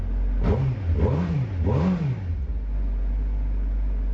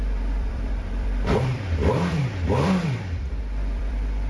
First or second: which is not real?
second